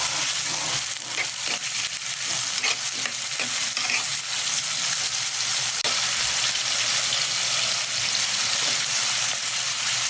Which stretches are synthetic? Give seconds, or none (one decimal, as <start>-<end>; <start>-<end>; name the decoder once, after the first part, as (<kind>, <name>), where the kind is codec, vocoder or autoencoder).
none